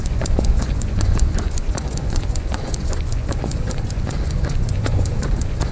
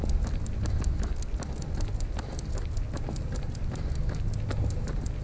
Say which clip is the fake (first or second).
first